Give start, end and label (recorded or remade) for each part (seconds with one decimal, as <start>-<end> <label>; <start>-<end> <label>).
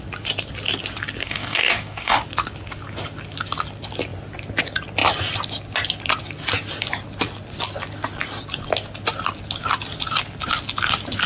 0.0-1.2 recorded; 1.2-2.2 remade; 2.2-11.3 recorded